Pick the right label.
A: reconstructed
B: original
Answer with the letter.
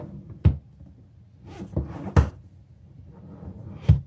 B